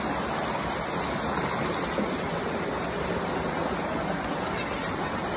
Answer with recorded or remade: recorded